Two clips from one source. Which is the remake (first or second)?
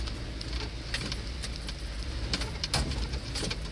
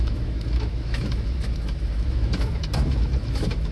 second